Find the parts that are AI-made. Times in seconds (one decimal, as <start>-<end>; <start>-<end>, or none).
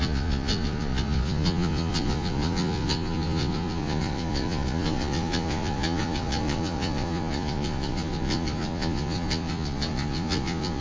0.0-10.8